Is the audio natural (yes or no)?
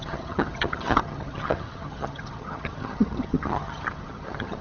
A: no